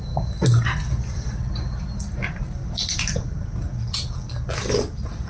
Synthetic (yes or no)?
no